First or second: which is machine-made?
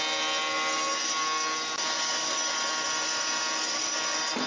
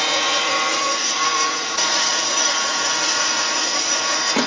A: second